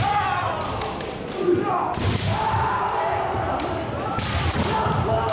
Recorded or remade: remade